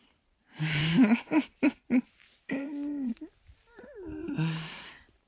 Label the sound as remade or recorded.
remade